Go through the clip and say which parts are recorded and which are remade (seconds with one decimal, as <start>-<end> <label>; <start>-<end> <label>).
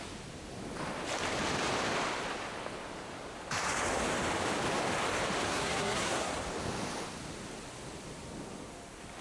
0.0-5.5 recorded; 5.5-6.3 remade; 6.3-9.2 recorded